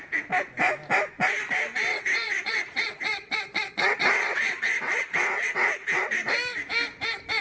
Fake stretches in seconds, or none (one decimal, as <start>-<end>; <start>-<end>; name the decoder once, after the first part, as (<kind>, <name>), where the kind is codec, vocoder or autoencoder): 1.9-6.3 (vocoder, WaveNeXt)